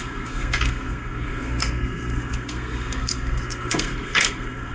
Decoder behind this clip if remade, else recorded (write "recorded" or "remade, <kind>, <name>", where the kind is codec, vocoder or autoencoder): remade, codec, SNAC